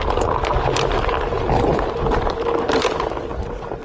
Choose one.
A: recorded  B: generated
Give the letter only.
A